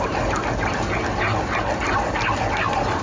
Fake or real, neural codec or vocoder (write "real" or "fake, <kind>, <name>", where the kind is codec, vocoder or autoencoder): real